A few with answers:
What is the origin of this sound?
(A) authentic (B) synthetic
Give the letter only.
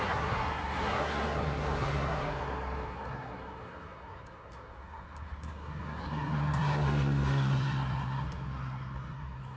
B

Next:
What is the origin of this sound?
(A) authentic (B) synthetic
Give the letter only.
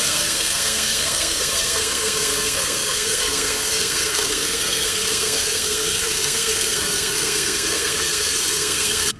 B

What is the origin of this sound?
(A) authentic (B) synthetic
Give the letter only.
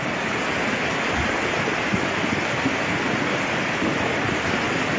A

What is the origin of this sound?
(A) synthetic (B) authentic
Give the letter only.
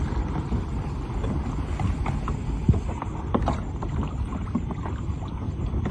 B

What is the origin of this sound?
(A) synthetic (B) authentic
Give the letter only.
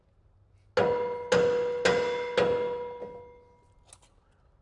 B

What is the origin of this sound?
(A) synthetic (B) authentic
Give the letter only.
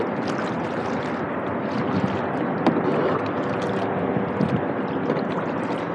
B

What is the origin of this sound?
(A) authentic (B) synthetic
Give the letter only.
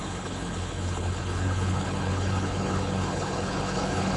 B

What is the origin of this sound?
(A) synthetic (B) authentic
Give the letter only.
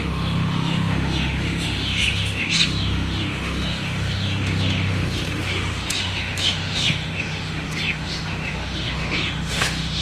A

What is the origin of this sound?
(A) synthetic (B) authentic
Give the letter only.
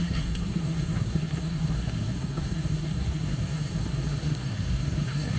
A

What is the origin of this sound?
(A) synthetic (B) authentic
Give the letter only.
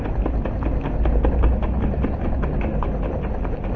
B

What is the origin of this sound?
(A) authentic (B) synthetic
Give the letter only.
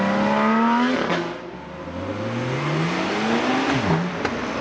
A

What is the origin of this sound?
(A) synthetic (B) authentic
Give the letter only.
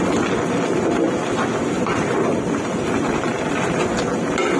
B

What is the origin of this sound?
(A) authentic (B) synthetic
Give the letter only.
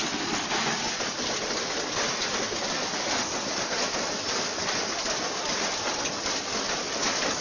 A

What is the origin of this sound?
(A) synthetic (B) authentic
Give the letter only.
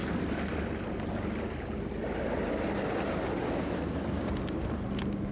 B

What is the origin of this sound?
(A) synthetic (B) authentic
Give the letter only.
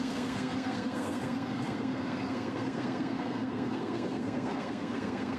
A